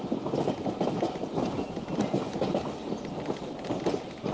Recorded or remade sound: recorded